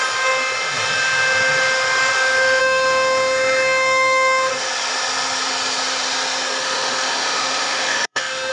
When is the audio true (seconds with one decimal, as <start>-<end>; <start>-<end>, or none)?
0.0-2.6; 4.5-6.6